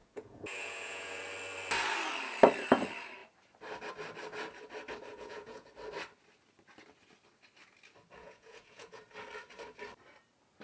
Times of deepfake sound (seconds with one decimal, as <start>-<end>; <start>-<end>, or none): 0.0-1.2; 5.1-5.7; 8.2-9.0